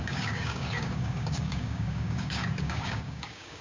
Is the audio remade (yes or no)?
yes